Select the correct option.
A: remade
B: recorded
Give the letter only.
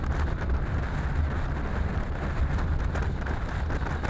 B